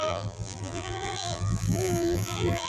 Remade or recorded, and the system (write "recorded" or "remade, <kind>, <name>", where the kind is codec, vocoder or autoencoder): remade, vocoder, BigVGAN v2